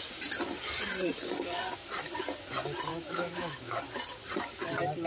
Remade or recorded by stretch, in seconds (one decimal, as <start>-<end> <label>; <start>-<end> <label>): 0.0-2.9 recorded; 2.9-3.8 remade; 3.8-5.1 recorded